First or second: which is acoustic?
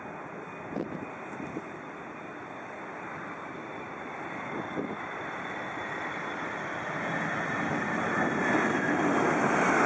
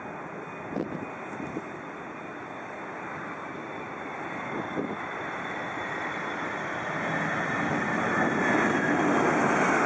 second